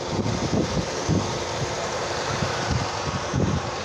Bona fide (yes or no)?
no